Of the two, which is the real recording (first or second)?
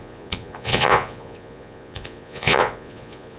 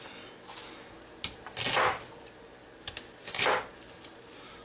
second